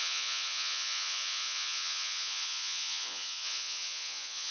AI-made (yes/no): yes